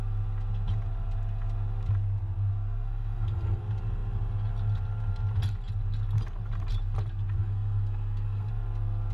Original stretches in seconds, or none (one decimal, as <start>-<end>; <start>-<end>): 0.0-2.5; 3.6-7.4; 8.5-9.1